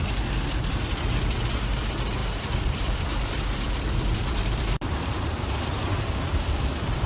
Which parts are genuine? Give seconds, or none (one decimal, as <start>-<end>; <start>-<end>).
0.0-2.2; 5.8-7.1